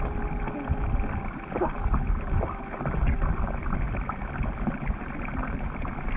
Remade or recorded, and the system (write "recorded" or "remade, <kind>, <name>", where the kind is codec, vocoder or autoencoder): recorded